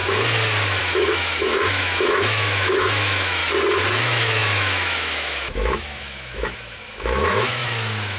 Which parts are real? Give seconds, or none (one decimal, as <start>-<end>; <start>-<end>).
0.0-0.8; 3.4-4.0